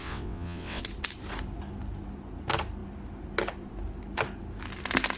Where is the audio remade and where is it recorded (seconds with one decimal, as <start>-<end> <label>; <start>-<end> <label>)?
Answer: 0.0-0.8 remade; 0.8-5.2 recorded